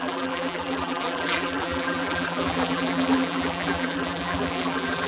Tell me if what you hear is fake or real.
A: fake